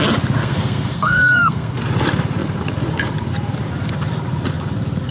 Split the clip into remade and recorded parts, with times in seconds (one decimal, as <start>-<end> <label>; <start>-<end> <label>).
0.0-0.4 recorded; 0.4-1.8 remade; 1.8-5.1 recorded